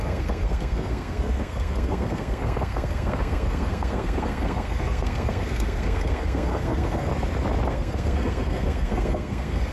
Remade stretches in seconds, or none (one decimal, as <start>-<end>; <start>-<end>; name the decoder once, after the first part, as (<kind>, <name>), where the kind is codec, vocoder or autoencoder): 0.0-7.1 (codec, SNAC); 7.7-9.7